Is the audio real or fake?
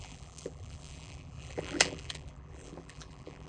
fake